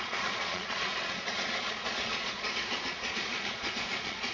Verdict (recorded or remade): remade